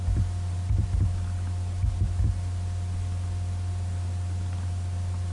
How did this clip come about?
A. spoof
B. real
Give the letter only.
B